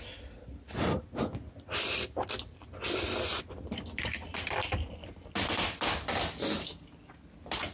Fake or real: real